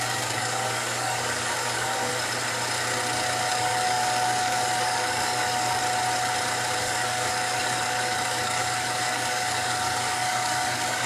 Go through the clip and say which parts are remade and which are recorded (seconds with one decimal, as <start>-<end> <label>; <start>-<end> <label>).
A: 0.0-2.1 remade; 2.1-3.5 recorded; 3.5-5.8 remade; 5.8-6.8 recorded; 6.8-11.1 remade